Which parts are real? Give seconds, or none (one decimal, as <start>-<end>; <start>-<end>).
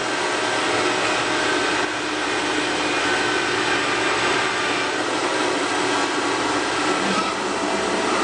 0.0-8.2